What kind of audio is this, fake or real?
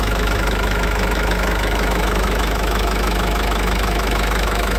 fake